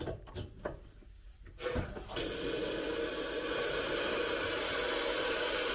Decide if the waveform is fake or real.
real